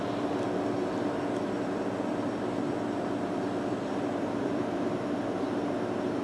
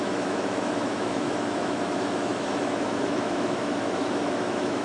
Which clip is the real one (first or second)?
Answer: first